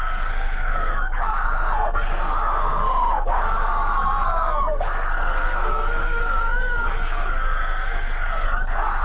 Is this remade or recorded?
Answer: remade